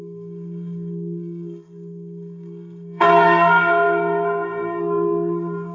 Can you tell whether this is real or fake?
fake